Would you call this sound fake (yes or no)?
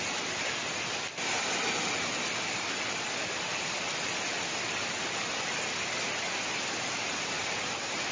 no